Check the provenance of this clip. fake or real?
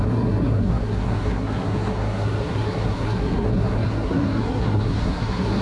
fake